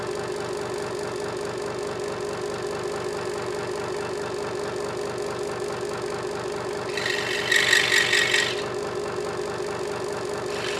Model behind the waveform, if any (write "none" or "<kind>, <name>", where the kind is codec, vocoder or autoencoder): none